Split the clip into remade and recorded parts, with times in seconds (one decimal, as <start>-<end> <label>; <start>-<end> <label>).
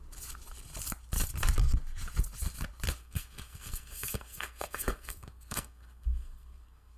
0.0-3.0 recorded; 3.0-7.0 remade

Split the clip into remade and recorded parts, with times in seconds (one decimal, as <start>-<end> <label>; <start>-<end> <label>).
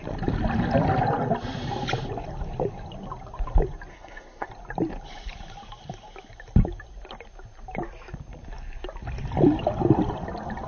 0.0-3.9 recorded; 3.9-4.5 remade; 4.5-10.7 recorded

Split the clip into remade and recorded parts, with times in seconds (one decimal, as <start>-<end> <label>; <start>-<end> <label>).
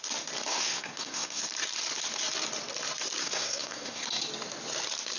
0.0-0.5 recorded; 0.5-1.4 remade; 1.4-3.2 recorded; 3.2-4.0 remade; 4.0-5.2 recorded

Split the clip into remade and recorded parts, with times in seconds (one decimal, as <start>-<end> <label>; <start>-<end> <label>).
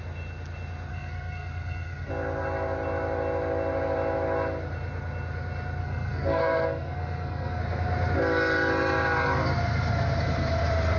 0.0-0.9 recorded; 0.9-2.1 remade; 2.1-5.8 recorded; 5.8-7.6 remade; 7.6-11.0 recorded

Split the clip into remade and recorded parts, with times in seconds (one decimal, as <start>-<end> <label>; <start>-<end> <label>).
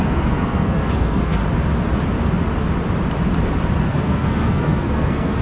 0.0-1.4 remade; 1.4-3.8 recorded; 3.8-5.4 remade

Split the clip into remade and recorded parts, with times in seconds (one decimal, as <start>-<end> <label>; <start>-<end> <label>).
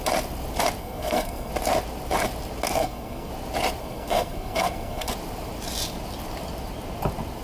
0.0-0.8 recorded; 0.8-1.5 remade; 1.5-2.7 recorded; 2.7-3.3 remade; 3.3-3.8 recorded; 3.8-5.1 remade; 5.1-7.4 recorded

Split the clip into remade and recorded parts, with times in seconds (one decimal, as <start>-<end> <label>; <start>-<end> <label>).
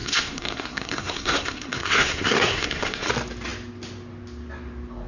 0.0-3.1 remade; 3.1-5.1 recorded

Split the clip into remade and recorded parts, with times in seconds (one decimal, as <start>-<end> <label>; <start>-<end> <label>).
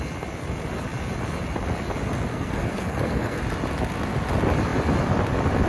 0.0-2.3 recorded; 2.3-3.4 remade; 3.4-5.7 recorded